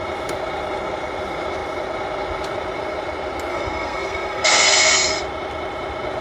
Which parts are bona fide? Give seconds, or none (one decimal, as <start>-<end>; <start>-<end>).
0.0-3.5; 5.2-6.2